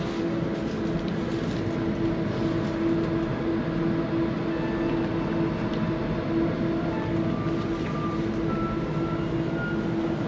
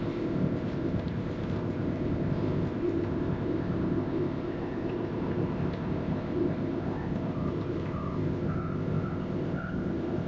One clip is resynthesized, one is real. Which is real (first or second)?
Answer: first